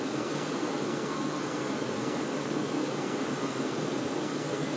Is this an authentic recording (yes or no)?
no